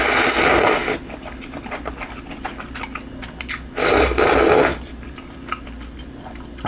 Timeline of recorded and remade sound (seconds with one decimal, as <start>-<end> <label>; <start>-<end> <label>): 0.0-6.7 recorded